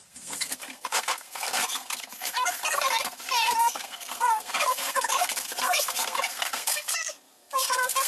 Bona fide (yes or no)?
no